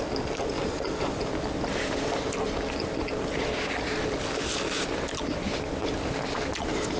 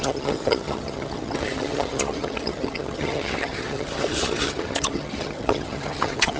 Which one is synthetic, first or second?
second